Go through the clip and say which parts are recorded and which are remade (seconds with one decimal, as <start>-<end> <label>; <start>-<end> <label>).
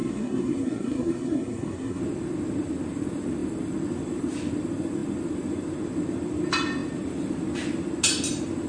0.0-2.0 remade; 2.0-8.7 recorded